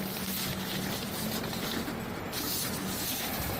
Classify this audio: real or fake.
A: real